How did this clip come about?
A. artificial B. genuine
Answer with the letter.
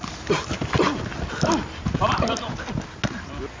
B